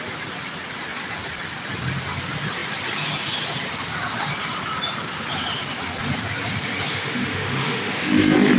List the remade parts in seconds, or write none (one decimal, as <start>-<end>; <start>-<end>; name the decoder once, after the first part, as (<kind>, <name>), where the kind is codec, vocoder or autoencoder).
6.9-8.6 (autoencoder, DAC-VAE)